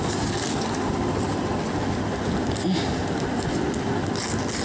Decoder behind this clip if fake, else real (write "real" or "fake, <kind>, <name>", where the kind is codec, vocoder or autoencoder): real